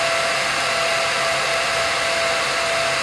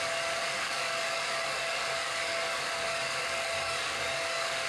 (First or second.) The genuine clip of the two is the first